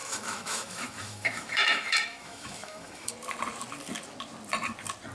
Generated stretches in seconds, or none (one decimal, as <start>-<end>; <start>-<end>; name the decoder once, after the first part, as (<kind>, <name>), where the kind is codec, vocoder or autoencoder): 0.0-3.1 (autoencoder, DAC-VAE)